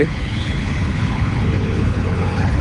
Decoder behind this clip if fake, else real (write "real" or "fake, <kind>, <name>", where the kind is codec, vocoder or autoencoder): fake, codec, HILCodec